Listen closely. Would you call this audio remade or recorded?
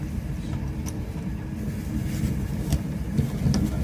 recorded